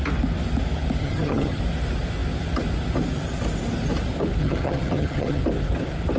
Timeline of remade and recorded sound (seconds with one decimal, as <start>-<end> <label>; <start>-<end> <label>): 0.0-1.0 recorded; 1.0-1.6 remade; 1.6-4.4 recorded; 4.4-5.4 remade; 5.4-6.2 recorded